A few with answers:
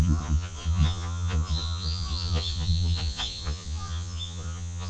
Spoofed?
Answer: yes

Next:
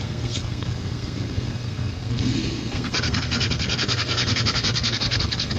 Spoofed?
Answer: yes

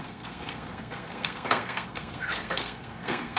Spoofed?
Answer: yes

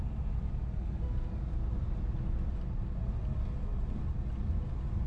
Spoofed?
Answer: no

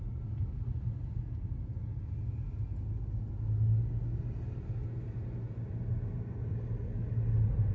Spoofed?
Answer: no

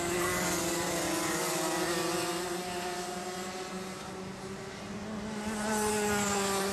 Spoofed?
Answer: no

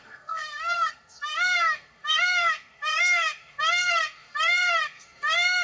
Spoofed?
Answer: yes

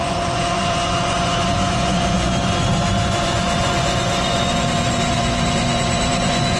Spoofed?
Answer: yes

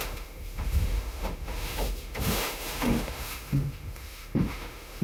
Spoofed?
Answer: yes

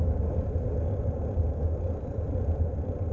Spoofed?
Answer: no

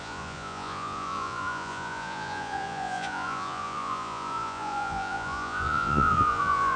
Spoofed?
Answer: yes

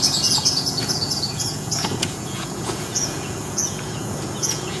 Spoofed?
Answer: yes